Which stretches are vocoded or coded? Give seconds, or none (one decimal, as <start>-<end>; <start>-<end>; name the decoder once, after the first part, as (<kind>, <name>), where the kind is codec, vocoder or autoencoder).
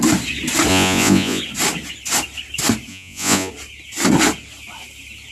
0.7-1.4 (vocoder, Vocos); 2.9-3.5